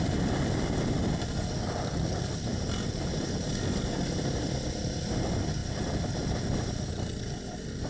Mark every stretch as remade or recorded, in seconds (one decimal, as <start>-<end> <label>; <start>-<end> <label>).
0.0-2.5 recorded; 2.5-3.5 remade; 3.5-7.9 recorded

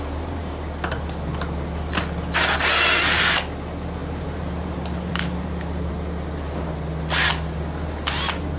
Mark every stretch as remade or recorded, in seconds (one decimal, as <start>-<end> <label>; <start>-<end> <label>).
0.0-4.0 recorded; 4.0-5.9 remade; 5.9-8.6 recorded

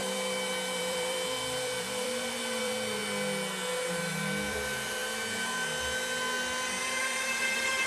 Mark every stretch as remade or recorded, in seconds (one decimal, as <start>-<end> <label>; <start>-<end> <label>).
0.0-3.0 remade; 3.0-4.0 recorded; 4.0-5.0 remade; 5.0-7.0 recorded; 7.0-7.9 remade

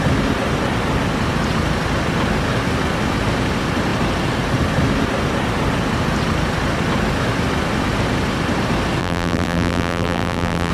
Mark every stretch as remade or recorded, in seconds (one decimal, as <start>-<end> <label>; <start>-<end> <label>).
0.0-9.0 recorded; 9.0-10.7 remade

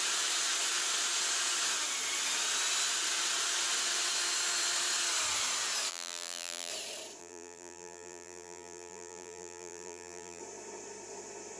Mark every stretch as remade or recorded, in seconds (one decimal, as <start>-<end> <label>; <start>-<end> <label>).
0.0-5.9 recorded; 5.9-6.7 remade; 6.7-7.2 recorded; 7.2-10.4 remade; 10.4-11.6 recorded

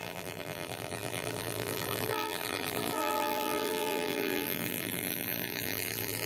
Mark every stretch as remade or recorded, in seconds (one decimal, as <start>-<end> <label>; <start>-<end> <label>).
0.0-6.3 remade